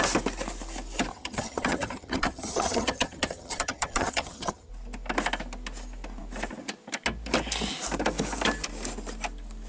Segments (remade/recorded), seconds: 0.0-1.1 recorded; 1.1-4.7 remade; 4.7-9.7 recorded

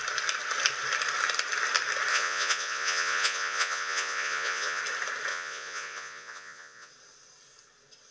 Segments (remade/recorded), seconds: 0.0-2.1 recorded; 2.1-4.8 remade; 4.8-5.3 recorded; 5.3-6.9 remade; 6.9-8.1 recorded

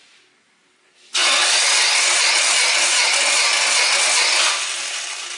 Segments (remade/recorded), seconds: 0.0-5.4 recorded

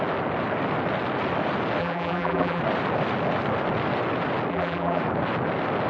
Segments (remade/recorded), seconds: 0.0-1.8 recorded; 1.8-2.6 remade; 2.6-4.5 recorded; 4.5-5.0 remade; 5.0-5.9 recorded

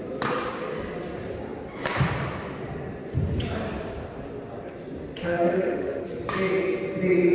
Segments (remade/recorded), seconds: 0.0-5.2 recorded; 5.2-6.0 remade; 6.0-7.3 recorded

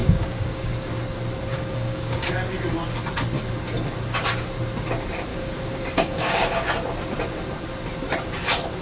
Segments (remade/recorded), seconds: 0.0-0.9 remade; 0.9-1.5 recorded; 1.5-2.3 remade; 2.3-5.3 recorded; 5.3-6.7 remade; 6.7-8.8 recorded

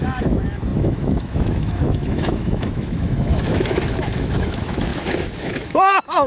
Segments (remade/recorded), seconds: 0.0-6.3 remade

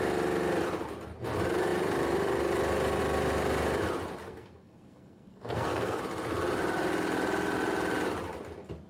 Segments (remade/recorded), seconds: 0.0-4.2 recorded; 4.2-6.0 remade; 6.0-8.9 recorded